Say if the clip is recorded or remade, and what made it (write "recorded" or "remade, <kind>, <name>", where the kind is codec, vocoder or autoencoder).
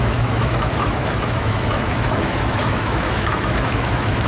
remade, autoencoder, DAC-VAE